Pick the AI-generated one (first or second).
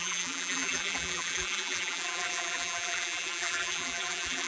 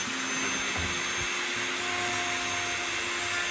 first